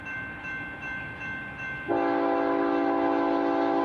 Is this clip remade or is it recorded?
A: recorded